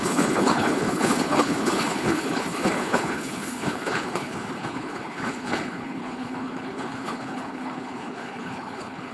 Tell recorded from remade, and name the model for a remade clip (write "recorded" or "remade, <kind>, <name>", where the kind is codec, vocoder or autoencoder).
remade, codec, HILCodec